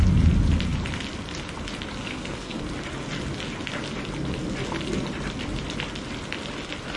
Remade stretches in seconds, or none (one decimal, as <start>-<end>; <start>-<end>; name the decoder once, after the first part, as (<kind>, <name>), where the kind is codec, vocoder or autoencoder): 2.0-2.6 (codec, SNAC)